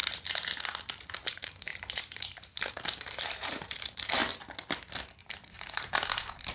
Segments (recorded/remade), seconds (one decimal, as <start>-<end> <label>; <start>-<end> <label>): 0.0-1.1 recorded; 1.1-4.2 remade; 4.2-5.2 recorded; 5.2-6.5 remade